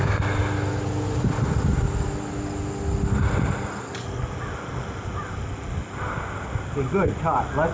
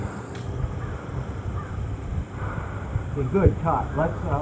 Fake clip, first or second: second